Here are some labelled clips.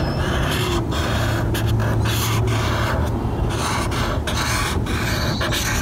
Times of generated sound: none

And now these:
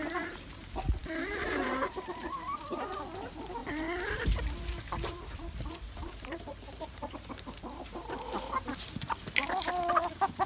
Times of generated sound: 0.0-9.2 (vocoder, BigVGAN v2); 10.1-10.5

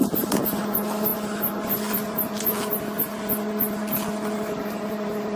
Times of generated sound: none

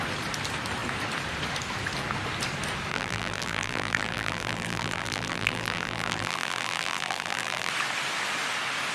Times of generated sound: 2.9-7.7 (vocoder, BigVGAN v2)

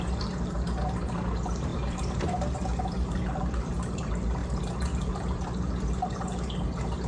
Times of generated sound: 0.0-4.4 (vocoder, BigVGAN v2); 5.1-7.1

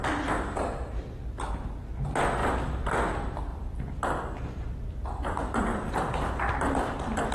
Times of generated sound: 2.4-2.9 (vocoder, BigVGAN v2); 3.5-7.3